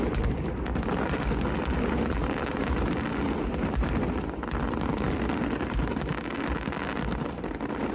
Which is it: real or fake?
real